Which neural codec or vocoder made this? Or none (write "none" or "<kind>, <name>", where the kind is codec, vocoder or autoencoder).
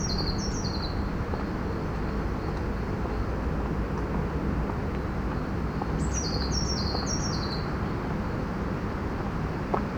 none